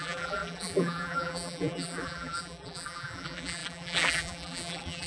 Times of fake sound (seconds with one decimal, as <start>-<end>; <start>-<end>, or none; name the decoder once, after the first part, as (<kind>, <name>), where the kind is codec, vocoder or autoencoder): 0.0-5.1 (vocoder, BigVGAN v2)